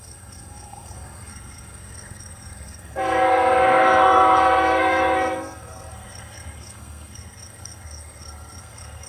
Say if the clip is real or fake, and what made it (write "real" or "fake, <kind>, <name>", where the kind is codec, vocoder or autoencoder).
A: fake, codec, SNAC